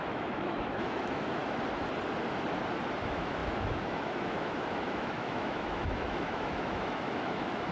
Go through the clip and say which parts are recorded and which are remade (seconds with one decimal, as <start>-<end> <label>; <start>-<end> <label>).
0.0-1.4 remade; 1.4-3.0 recorded; 3.0-7.7 remade